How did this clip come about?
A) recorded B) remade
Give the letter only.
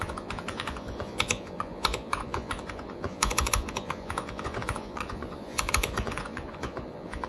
B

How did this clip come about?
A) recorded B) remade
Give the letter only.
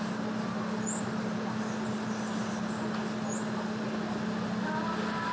A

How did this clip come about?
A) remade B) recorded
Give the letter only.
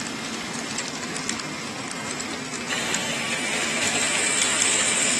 B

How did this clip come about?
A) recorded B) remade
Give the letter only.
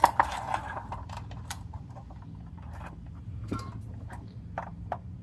B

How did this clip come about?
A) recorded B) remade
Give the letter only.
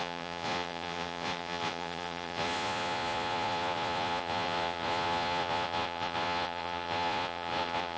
B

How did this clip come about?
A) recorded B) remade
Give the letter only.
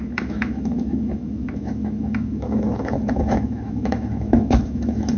B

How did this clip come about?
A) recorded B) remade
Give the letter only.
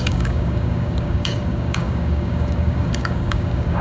B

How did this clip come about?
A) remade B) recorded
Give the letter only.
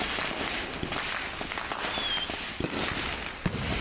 B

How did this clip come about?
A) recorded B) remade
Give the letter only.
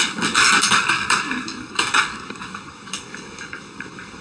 B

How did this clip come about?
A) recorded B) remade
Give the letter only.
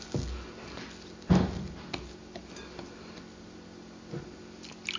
A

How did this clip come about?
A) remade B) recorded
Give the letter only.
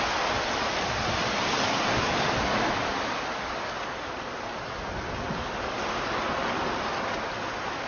B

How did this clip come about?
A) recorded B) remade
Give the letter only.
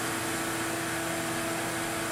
A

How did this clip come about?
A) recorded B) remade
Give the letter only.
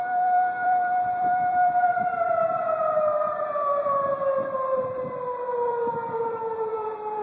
B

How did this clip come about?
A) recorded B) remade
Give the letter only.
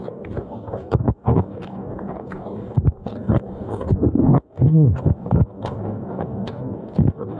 B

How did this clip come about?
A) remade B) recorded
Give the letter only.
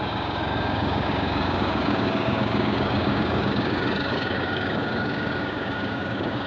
A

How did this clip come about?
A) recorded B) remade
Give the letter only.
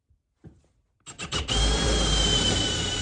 A